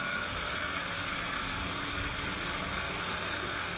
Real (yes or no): no